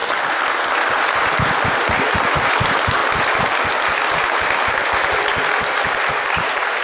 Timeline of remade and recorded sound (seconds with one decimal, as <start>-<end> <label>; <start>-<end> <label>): 0.0-6.8 recorded